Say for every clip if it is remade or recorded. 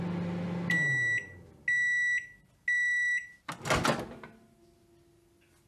recorded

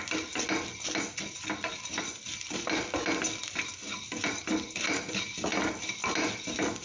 recorded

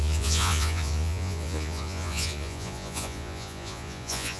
remade